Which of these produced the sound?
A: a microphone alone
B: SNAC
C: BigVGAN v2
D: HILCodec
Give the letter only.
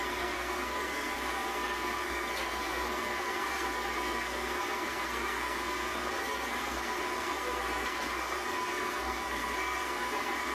B